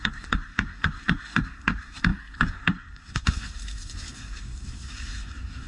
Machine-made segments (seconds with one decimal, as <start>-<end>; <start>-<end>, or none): 0.0-5.7